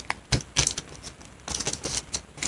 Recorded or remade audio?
recorded